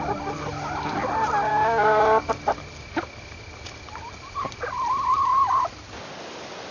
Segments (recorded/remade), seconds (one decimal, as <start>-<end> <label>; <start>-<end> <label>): 0.0-1.5 recorded; 1.5-2.3 remade; 2.3-6.7 recorded